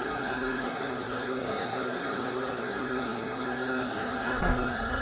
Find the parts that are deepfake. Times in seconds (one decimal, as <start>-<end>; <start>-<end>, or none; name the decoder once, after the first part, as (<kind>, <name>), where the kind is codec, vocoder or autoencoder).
0.0-5.0 (codec, SNAC)